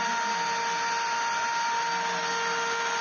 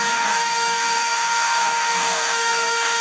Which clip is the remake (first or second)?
second